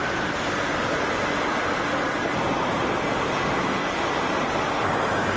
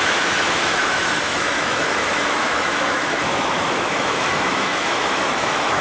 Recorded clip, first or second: first